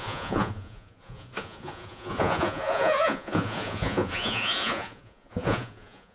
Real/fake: fake